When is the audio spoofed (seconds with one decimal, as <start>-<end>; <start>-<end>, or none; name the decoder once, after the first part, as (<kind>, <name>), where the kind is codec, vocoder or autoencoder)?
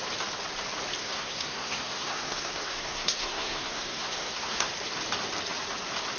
1.0-4.7 (codec, SNAC)